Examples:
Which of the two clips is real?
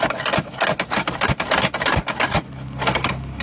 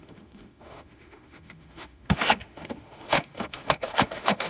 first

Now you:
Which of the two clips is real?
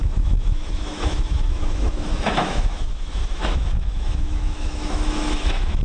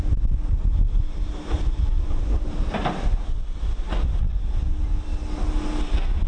second